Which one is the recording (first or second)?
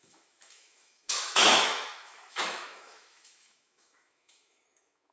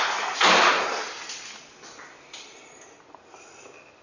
second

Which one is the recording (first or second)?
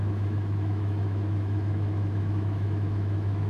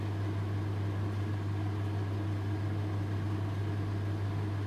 second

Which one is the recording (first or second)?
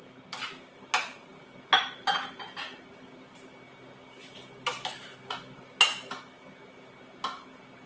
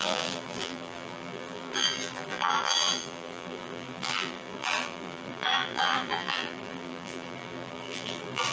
first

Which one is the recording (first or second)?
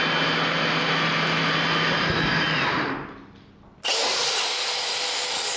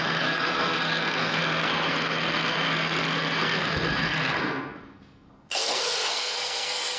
first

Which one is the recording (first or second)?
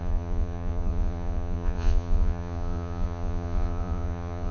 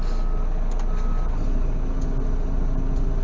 second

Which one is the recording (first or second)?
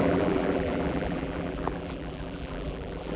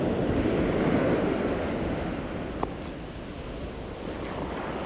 second